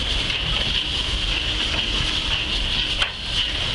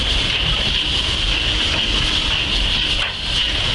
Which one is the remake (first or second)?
second